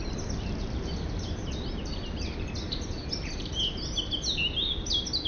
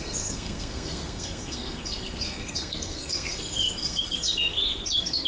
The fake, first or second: second